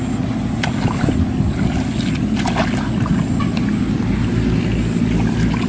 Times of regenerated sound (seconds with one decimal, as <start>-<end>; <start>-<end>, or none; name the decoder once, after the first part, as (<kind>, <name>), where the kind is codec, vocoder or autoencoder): none